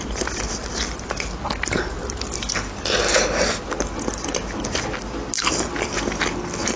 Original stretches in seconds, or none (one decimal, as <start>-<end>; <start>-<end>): 0.0-6.8